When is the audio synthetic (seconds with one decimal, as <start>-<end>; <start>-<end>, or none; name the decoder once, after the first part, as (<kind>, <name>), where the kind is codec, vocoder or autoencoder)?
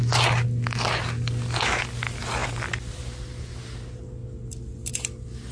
none